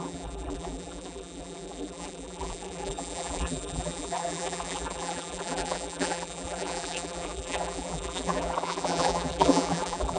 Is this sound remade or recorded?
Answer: remade